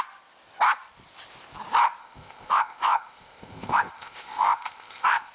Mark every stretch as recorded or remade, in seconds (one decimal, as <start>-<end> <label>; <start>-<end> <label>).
0.0-2.0 recorded; 2.0-5.3 remade